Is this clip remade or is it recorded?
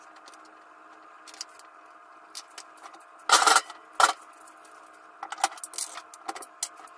recorded